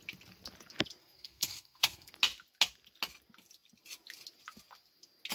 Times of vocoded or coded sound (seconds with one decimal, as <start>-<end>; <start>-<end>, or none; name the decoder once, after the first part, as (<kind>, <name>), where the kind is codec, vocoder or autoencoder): 1.0-2.1 (codec, SNAC)